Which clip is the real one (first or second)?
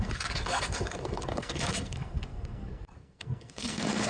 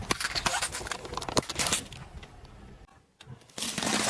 second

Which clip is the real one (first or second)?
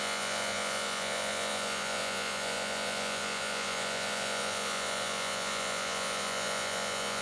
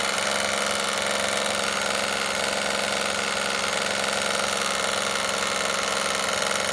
second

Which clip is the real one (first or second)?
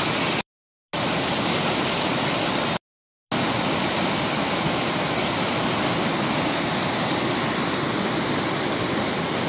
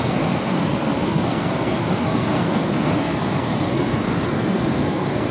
first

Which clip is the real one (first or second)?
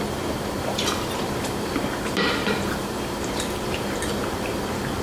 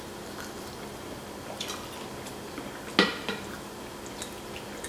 second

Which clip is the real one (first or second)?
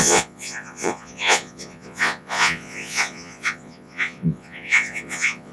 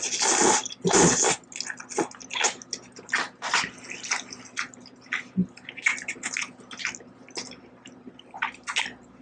second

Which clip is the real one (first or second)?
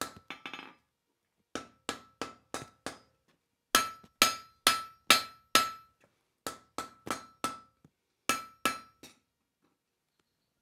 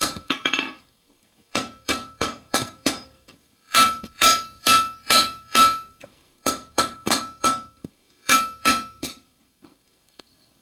first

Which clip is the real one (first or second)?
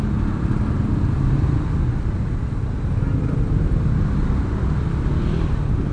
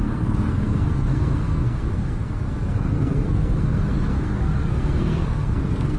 first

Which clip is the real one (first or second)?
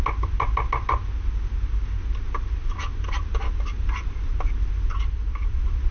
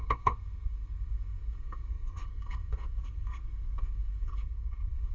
first